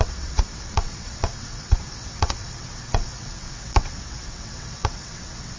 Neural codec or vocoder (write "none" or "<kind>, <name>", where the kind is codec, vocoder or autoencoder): vocoder, WaveNeXt